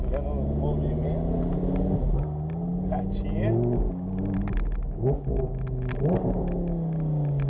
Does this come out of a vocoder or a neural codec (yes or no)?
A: no